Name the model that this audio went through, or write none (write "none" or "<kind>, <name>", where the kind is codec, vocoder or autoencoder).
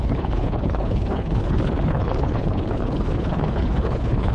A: codec, HILCodec